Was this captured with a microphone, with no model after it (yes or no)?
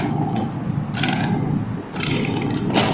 yes